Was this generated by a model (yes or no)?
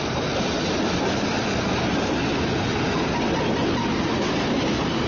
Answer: no